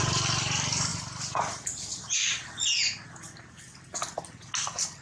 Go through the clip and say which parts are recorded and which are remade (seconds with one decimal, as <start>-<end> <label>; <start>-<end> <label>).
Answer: 0.0-5.0 recorded